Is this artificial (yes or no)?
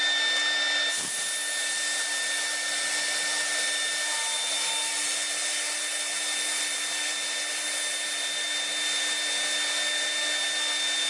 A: no